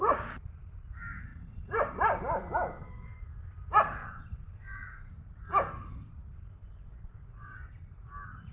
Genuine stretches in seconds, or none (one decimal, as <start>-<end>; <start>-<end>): 0.0-4.0; 5.1-6.6; 7.7-8.5